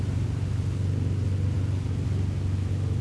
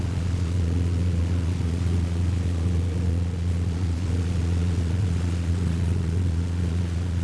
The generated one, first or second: second